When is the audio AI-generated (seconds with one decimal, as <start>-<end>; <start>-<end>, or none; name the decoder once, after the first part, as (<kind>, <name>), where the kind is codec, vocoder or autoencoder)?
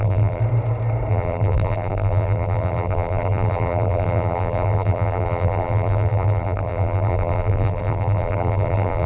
0.0-0.4 (vocoder, BigVGAN v2); 1.1-9.1